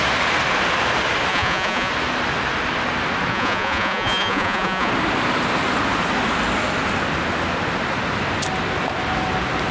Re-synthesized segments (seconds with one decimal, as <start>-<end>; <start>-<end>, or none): 1.3-1.9; 3.3-4.9